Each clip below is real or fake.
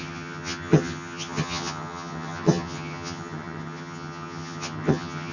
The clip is fake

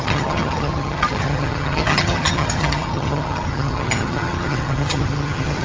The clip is fake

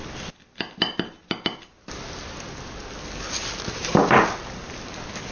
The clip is real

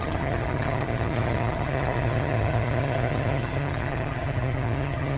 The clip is fake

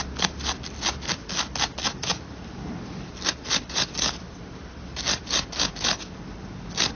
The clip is real